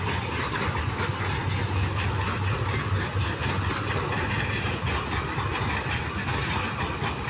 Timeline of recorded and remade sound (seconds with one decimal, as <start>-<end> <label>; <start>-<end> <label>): 0.0-7.3 recorded